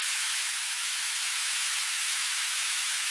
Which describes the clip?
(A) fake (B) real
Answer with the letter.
A